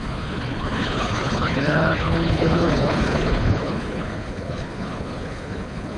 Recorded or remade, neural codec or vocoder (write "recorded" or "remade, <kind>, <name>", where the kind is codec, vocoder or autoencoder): remade, codec, HILCodec